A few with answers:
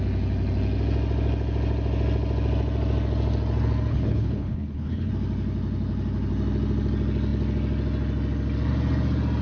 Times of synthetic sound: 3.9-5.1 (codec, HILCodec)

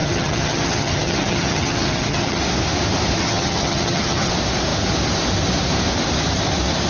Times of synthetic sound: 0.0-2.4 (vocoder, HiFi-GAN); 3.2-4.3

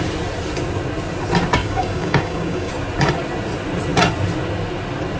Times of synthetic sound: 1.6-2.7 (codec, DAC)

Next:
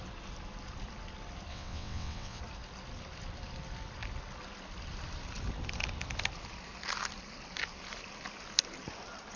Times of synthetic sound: 1.5-2.4 (vocoder, WaveNeXt)

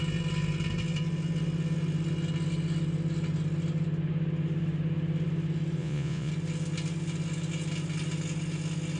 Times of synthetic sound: 5.8-6.3 (vocoder, Vocos)

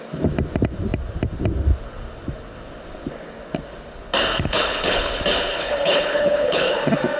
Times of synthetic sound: 4.3-5.1 (codec, HILCodec); 5.5-6.8

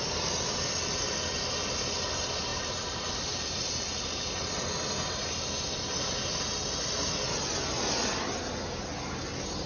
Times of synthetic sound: 2.5-4.4 (vocoder, BigVGAN v2)

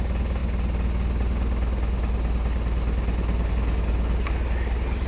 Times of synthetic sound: none